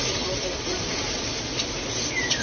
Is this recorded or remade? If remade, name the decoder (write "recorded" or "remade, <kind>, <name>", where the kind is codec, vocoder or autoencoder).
recorded